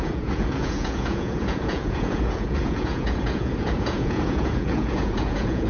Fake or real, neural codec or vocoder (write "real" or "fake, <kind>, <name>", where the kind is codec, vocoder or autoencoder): fake, vocoder, Vocos